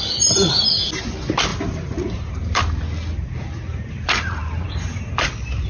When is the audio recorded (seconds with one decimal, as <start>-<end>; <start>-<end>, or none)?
0.0-1.5; 2.6-3.7; 5.0-5.7